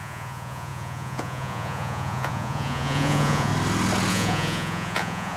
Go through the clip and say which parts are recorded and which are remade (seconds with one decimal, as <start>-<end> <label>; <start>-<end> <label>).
0.0-3.5 remade; 3.5-4.1 recorded; 4.1-5.4 remade